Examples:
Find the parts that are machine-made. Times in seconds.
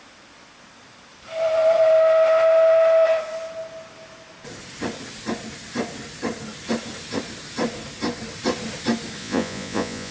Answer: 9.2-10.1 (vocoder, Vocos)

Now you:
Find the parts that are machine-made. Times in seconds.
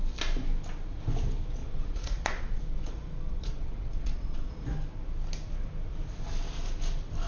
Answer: 1.6-4.5 (vocoder, Vocos)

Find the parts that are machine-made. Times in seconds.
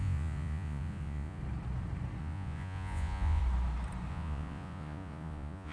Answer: 0.0-1.4 (vocoder, Vocos); 2.2-3.4; 4.1-5.7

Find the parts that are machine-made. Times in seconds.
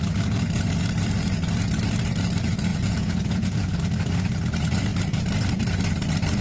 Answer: 2.7-3.7 (vocoder, Vocos)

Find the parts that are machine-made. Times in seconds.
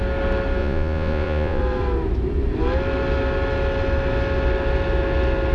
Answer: 0.6-1.6 (vocoder, Vocos)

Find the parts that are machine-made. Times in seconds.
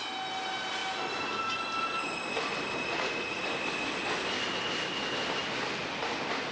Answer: 2.8-3.4 (vocoder, Vocos)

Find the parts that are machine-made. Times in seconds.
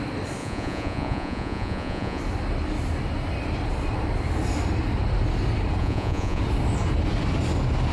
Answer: 0.4-2.2 (vocoder, Vocos); 5.8-6.4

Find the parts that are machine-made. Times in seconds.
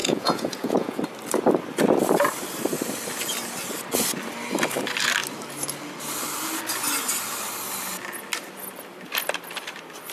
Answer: 0.0-1.0 (vocoder, Vocos)